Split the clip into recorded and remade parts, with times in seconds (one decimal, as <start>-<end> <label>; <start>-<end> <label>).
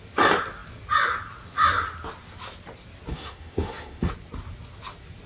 0.0-3.1 recorded; 3.1-4.1 remade; 4.1-5.3 recorded